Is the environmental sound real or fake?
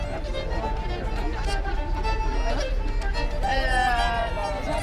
fake